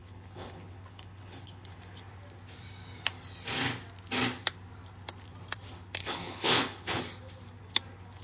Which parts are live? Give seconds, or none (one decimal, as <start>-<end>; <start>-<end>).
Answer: 1.7-6.0; 7.0-8.2